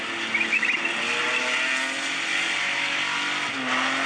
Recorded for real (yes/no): yes